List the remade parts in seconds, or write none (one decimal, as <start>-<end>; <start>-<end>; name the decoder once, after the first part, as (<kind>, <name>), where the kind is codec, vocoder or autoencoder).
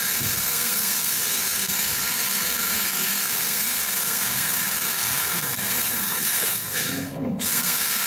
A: 0.0-8.1 (codec, SNAC)